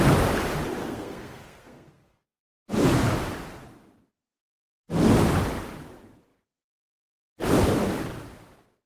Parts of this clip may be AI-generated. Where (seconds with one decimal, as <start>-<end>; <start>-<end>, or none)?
0.8-2.5